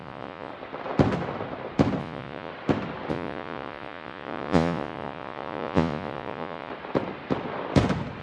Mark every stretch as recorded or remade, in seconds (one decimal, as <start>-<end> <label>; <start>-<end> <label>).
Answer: 0.0-0.5 remade; 0.5-2.0 recorded; 2.0-2.5 remade; 2.5-3.1 recorded; 3.1-6.7 remade; 6.7-8.2 recorded